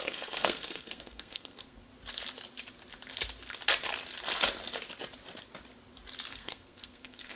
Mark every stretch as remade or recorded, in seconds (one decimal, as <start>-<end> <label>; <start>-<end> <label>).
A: 0.0-1.9 remade; 1.9-6.3 recorded; 6.3-7.4 remade